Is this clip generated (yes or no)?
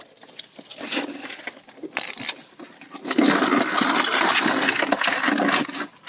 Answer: no